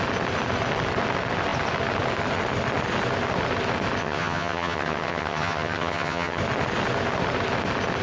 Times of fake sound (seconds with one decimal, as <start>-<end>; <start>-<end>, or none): 4.0-6.4